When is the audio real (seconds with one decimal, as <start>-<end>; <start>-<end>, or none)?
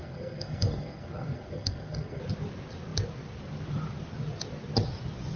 2.2-5.4